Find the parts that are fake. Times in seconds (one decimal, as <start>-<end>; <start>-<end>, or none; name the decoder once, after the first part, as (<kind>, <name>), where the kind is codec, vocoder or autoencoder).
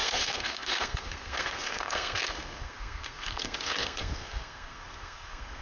0.0-5.6 (codec, SNAC)